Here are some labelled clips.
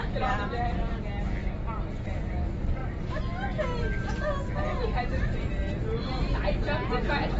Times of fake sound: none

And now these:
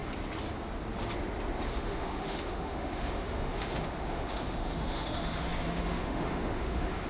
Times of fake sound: 1.7-7.1 (autoencoder, DAC-VAE)

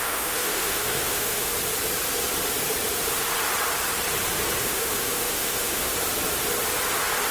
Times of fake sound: 0.0-1.5 (autoencoder, DAC-VAE); 4.6-5.9

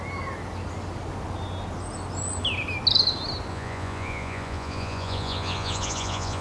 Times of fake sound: 3.5-6.4 (vocoder, Vocos)

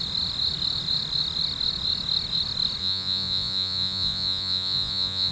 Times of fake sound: 2.8-5.3 (vocoder, Vocos)